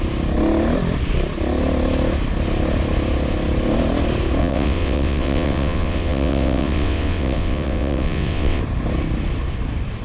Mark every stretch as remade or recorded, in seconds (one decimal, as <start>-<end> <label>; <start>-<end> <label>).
0.0-4.4 recorded; 4.4-8.6 remade; 8.6-10.0 recorded